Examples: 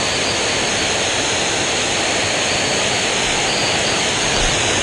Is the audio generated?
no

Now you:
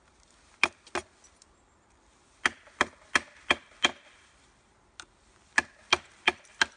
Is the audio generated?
no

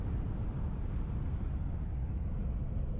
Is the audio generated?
no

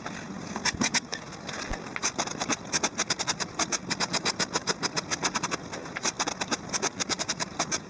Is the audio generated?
no